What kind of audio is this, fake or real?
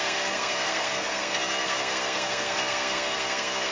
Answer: fake